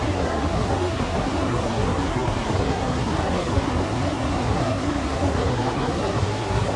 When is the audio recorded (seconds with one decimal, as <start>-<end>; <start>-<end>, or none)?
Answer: none